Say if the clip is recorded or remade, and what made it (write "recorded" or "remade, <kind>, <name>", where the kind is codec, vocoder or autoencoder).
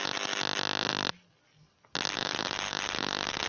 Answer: recorded